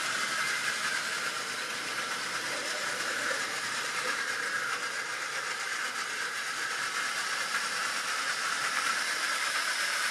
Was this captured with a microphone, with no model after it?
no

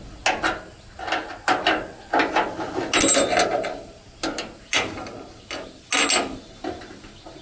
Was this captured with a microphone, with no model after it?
yes